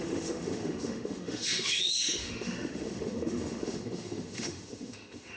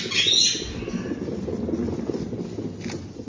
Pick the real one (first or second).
second